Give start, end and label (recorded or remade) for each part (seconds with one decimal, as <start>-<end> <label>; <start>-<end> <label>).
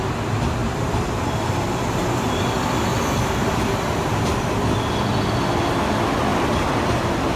0.0-0.6 recorded; 0.6-1.4 remade; 1.4-7.4 recorded